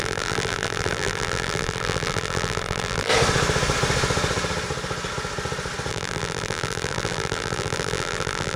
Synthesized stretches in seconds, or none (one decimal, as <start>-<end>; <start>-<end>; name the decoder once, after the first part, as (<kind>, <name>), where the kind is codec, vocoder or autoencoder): 0.0-3.1 (vocoder, BigVGAN v2); 5.9-8.6